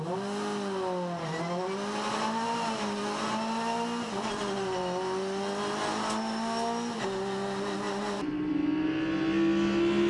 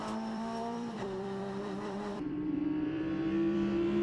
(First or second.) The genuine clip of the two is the first